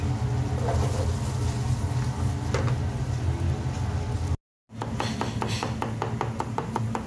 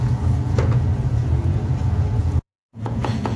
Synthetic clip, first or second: second